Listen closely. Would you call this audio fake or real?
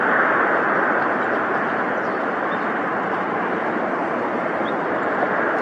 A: real